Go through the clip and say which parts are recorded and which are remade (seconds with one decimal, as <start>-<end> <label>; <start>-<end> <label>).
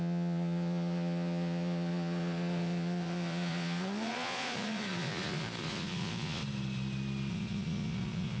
0.0-6.4 remade; 6.4-7.3 recorded; 7.3-8.4 remade